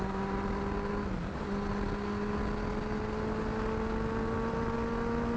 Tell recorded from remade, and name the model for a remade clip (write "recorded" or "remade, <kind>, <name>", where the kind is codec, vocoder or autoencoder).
recorded